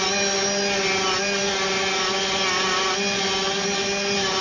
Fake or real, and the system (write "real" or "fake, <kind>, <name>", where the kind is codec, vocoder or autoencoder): real